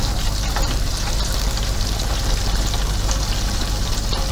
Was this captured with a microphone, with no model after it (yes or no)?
no